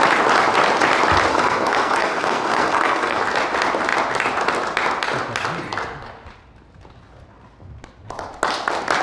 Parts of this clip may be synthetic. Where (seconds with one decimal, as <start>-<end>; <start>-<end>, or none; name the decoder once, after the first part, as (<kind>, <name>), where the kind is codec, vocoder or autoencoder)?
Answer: 1.3-3.2 (codec, SNAC)